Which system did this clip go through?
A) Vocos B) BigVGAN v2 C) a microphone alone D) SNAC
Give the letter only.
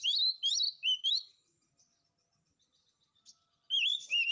C